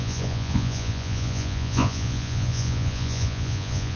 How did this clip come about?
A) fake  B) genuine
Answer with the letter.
A